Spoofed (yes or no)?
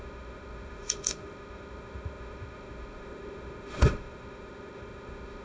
yes